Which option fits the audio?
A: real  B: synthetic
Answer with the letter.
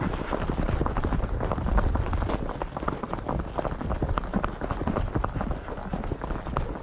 A